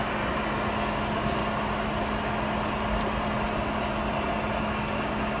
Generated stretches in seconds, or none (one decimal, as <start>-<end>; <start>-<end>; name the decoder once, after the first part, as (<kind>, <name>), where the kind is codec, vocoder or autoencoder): 0.0-0.4 (codec, DAC); 0.9-1.4; 4.6-5.4

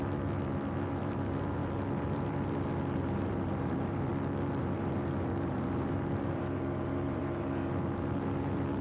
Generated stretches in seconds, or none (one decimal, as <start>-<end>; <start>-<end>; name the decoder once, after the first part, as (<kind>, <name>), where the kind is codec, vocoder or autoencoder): 0.0-4.1 (vocoder, BigVGAN v2); 4.6-8.8